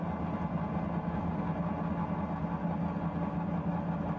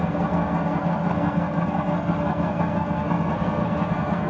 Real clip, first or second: first